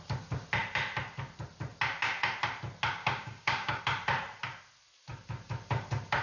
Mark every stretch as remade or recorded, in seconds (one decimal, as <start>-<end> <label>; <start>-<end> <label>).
0.0-3.0 recorded; 3.0-3.8 remade; 3.8-6.2 recorded